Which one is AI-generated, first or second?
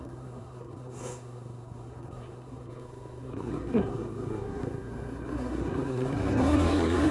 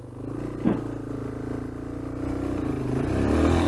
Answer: first